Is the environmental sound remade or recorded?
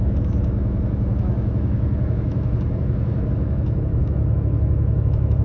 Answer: remade